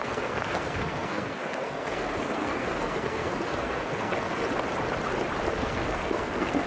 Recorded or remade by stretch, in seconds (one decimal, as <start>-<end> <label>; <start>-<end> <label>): 0.0-4.4 remade; 4.4-5.5 recorded; 5.5-6.7 remade